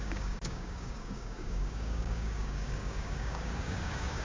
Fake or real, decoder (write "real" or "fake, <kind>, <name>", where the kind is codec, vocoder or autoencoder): fake, codec, DAC